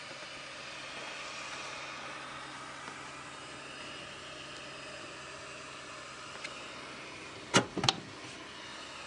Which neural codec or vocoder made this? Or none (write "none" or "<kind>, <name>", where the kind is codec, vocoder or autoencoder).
none